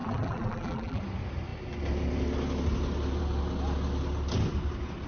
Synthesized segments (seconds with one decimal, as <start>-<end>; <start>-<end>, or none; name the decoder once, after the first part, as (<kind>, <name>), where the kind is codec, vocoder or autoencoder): 0.0-1.0 (vocoder, BigVGAN v2)